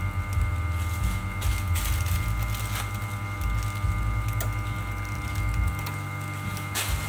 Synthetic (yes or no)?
no